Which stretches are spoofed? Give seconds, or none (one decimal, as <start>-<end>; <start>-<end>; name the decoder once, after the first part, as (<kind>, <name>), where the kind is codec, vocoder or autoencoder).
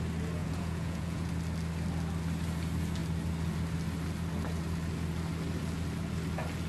0.4-1.3 (vocoder, Vocos)